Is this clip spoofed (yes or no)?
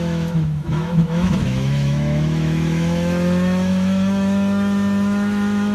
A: yes